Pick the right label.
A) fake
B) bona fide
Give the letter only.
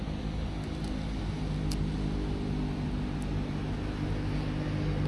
B